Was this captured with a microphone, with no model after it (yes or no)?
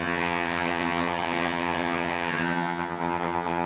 no